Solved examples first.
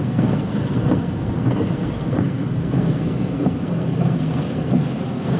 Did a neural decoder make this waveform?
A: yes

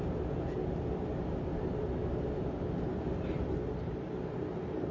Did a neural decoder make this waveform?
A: no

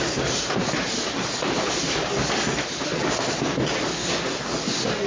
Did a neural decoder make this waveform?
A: no